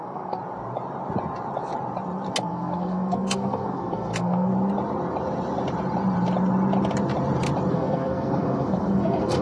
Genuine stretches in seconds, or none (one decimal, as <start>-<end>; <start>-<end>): 0.4-2.4; 4.5-7.7